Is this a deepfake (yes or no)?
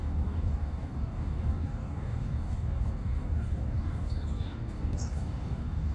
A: yes